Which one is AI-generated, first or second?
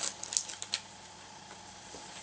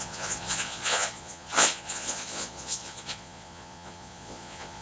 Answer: second